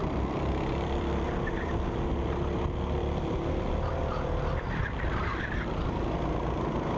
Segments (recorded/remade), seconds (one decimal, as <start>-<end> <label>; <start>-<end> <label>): 0.0-1.7 remade; 1.7-3.0 recorded; 3.0-5.4 remade; 5.4-7.0 recorded

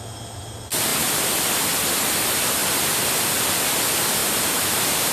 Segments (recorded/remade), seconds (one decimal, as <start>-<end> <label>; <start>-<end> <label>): 0.0-4.2 recorded; 4.2-5.1 remade

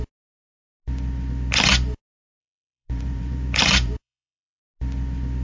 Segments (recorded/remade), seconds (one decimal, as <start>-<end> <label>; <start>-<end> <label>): 0.0-2.4 recorded; 2.4-4.6 remade; 4.6-5.4 recorded

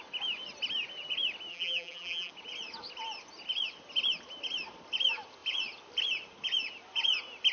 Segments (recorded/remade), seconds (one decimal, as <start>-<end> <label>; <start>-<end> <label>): 0.0-1.5 recorded; 1.5-2.3 remade; 2.3-7.5 recorded

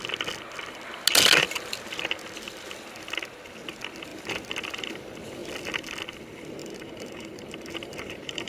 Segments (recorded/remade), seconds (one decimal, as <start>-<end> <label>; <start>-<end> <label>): 0.0-6.6 recorded; 6.6-8.5 remade